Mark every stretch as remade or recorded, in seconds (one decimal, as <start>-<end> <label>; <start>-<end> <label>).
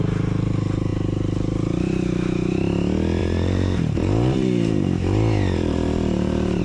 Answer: 0.0-3.2 recorded; 3.2-6.6 remade